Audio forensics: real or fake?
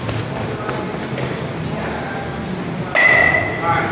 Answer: real